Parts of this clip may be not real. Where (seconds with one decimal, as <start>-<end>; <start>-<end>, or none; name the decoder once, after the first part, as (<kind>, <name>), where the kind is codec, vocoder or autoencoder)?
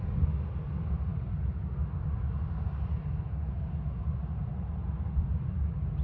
none